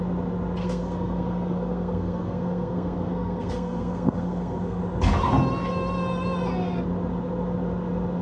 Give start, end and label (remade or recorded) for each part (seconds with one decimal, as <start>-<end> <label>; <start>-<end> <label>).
0.0-0.6 recorded; 0.6-4.8 remade; 4.8-8.2 recorded